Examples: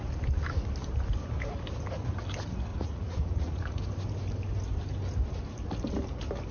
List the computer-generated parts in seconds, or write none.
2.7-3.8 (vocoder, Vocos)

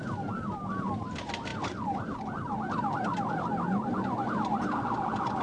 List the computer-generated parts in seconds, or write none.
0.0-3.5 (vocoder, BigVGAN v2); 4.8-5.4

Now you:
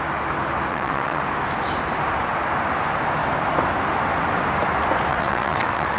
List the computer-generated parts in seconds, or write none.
0.7-1.2 (vocoder, WaveNeXt); 5.1-6.0